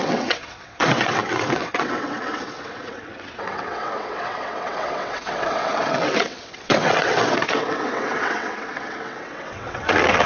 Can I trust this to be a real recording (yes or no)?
no